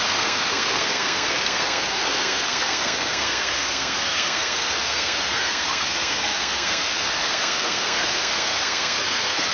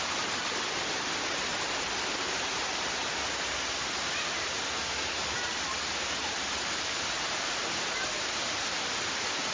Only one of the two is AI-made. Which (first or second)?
first